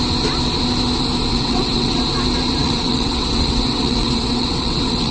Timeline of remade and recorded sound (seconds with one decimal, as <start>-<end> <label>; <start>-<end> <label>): 0.0-1.3 recorded; 1.3-2.0 remade; 2.0-2.6 recorded; 2.6-5.1 remade